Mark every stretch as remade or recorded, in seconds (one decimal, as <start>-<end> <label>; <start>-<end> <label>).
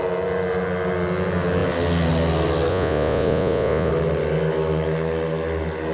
0.0-2.7 recorded; 2.7-3.9 remade; 3.9-5.9 recorded